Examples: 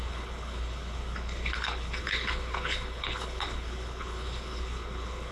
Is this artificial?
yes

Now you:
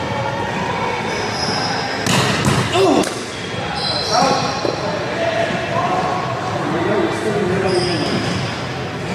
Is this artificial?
no